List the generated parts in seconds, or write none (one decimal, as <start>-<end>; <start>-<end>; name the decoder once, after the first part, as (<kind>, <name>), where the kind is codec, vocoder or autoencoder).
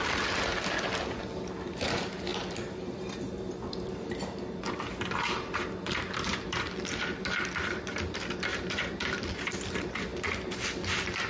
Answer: 8.5-9.3 (vocoder, BigVGAN v2)